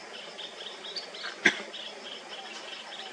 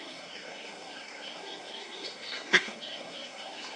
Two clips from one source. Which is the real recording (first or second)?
first